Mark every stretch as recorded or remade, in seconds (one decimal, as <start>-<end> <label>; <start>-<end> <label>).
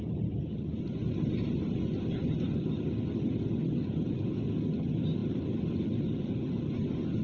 0.0-7.2 recorded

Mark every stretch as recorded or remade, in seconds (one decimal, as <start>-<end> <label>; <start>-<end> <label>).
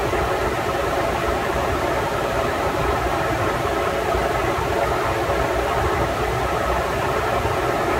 0.0-3.7 remade; 3.7-5.8 recorded; 5.8-6.3 remade; 6.3-8.0 recorded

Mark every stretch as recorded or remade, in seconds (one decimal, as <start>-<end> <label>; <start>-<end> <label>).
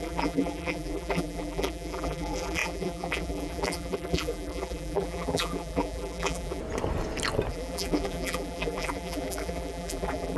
0.0-6.6 remade; 6.6-7.5 recorded; 7.5-10.4 remade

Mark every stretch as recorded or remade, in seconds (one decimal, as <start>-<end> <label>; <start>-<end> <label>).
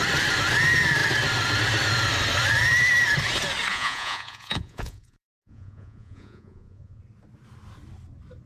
0.0-3.7 recorded; 3.7-7.0 remade; 7.0-8.5 recorded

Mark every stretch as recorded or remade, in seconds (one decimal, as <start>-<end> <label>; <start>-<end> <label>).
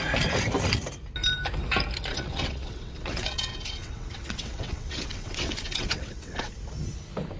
0.0-2.1 recorded; 2.1-6.5 remade; 6.5-7.4 recorded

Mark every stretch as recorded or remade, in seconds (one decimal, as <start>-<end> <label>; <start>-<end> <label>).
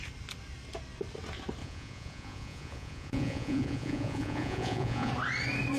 0.0-1.6 recorded; 1.6-5.1 remade; 5.1-5.8 recorded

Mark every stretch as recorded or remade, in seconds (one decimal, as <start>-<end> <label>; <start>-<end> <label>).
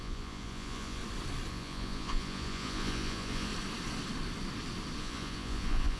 0.0-1.0 remade; 1.0-1.5 recorded; 1.5-3.5 remade; 3.5-5.0 recorded; 5.0-6.0 remade